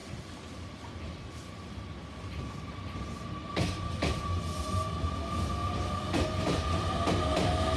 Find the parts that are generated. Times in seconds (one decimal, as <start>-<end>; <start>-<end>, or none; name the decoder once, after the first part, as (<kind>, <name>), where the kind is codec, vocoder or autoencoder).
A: none